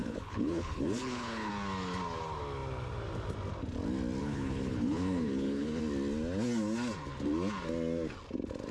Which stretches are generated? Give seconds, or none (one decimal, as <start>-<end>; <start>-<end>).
0.0-1.5; 4.2-5.8